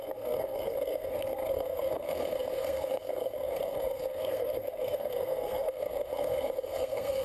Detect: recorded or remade remade